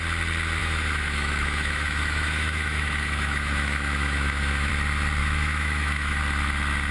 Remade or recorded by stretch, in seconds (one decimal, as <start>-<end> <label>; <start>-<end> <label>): 0.0-0.6 recorded; 0.6-4.7 remade; 4.7-5.2 recorded; 5.2-6.2 remade; 6.2-6.9 recorded